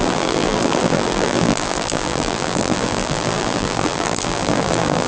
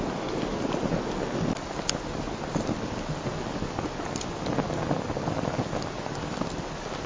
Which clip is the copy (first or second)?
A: first